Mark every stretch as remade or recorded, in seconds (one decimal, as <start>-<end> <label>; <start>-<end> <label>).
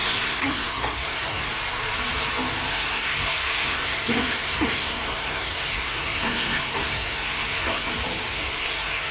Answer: 0.0-1.5 remade; 1.5-2.7 recorded; 2.7-7.9 remade; 7.9-8.3 recorded; 8.3-9.1 remade